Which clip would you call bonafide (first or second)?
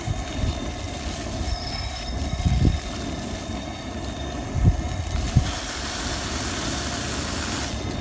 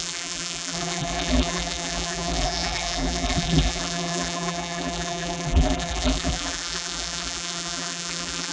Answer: first